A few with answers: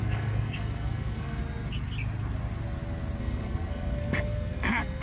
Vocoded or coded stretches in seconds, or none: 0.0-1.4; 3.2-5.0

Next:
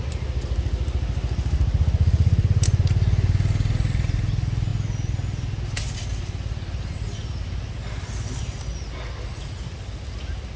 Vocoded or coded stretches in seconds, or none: none

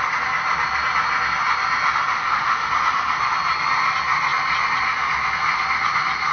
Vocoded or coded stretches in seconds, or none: 2.1-2.7

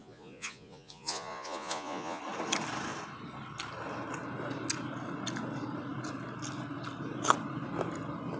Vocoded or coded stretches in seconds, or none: 0.0-2.2

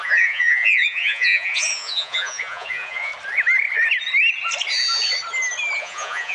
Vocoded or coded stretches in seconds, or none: 0.0-3.1; 5.8-6.3

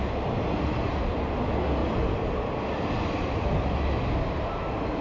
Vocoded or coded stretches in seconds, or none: 1.8-4.2

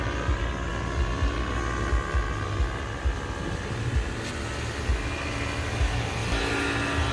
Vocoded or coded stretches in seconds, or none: none

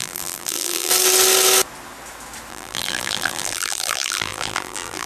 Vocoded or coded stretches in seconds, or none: 0.0-0.9; 2.5-5.1